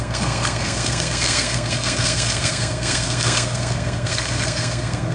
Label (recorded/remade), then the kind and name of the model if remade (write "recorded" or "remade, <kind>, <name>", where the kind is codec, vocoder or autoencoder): remade, codec, SNAC